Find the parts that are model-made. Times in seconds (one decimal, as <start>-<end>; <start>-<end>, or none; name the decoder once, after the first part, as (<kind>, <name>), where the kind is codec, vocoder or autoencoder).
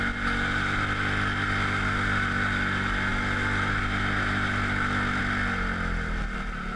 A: none